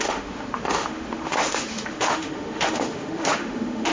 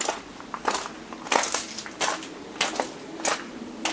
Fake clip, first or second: first